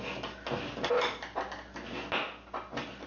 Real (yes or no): yes